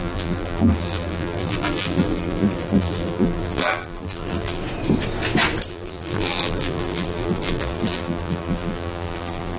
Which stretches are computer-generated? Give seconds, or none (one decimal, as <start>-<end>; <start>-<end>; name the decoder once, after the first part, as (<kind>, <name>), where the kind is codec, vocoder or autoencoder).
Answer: 0.0-4.6 (vocoder, BigVGAN v2); 5.7-9.6